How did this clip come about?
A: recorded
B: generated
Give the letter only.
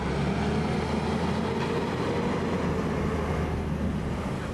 A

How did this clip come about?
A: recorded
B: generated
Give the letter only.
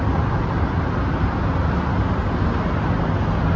A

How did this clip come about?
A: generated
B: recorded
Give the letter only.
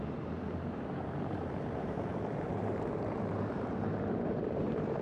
A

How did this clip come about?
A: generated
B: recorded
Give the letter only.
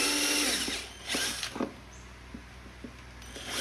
B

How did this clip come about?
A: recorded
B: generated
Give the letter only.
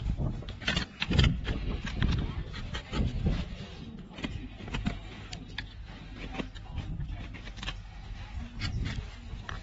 A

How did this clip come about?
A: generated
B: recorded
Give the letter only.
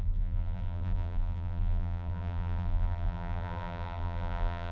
A